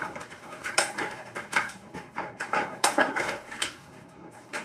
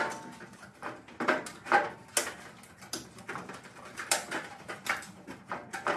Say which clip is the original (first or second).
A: second